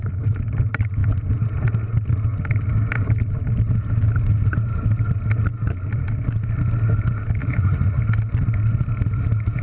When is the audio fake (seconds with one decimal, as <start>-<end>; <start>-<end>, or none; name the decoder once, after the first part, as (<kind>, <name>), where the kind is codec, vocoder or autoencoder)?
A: 7.4-8.0 (vocoder, Vocos)